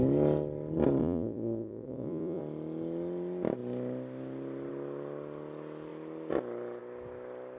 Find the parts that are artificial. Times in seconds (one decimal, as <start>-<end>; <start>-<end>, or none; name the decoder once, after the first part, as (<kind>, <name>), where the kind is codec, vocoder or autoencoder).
1.0-2.4 (vocoder, Vocos)

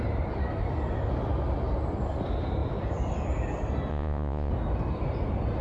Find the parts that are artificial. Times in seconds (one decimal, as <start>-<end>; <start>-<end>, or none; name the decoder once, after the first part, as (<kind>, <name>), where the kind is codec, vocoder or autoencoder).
3.9-4.5 (vocoder, Vocos)